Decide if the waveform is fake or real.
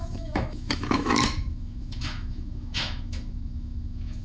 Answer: fake